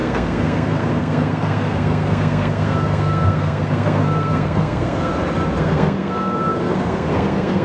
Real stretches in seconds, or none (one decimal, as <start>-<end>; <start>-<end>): 5.1-5.6

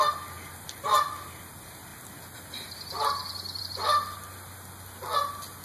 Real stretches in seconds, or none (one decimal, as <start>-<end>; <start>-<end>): 0.0-5.6

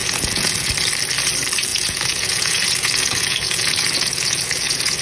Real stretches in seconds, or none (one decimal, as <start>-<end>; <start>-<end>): 0.7-1.7

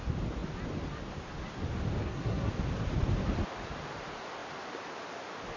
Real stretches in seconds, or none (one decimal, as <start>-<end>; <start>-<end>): 0.0-2.0; 2.5-5.6

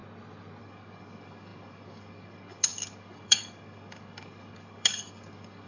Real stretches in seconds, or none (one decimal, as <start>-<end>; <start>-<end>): 0.0-0.6

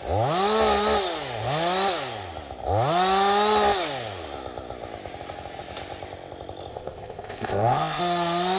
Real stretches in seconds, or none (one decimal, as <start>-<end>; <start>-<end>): 0.0-6.7; 8.0-8.6

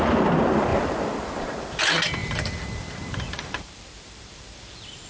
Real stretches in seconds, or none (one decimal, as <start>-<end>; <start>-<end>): 0.0-0.7; 1.8-2.2